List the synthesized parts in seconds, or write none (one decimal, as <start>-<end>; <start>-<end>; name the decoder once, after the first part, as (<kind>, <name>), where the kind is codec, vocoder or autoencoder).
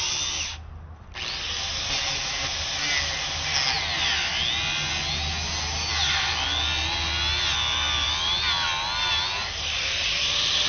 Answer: none